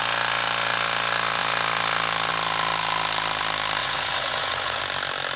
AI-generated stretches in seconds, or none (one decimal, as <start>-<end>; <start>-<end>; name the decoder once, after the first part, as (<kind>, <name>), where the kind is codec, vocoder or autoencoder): 3.8-4.8 (vocoder, Vocos)